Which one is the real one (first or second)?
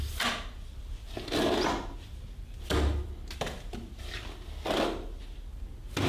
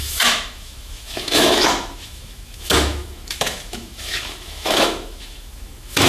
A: first